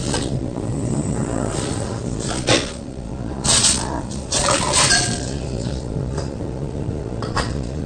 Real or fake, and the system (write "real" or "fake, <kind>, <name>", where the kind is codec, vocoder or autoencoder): fake, vocoder, Vocos